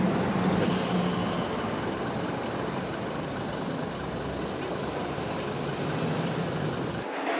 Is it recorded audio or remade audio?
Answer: recorded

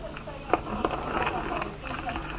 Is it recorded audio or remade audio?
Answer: recorded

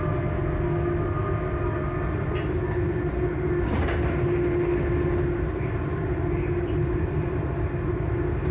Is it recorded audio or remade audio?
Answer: recorded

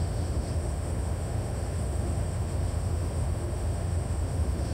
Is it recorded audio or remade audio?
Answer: remade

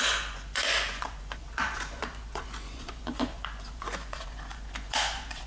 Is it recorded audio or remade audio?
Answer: remade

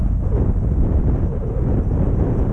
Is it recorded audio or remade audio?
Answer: recorded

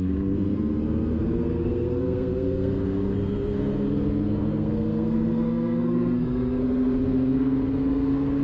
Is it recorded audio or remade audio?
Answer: remade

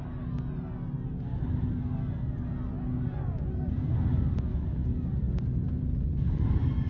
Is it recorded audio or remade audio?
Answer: recorded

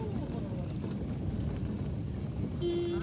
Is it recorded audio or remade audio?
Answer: recorded